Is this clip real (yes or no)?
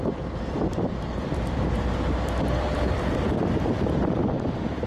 no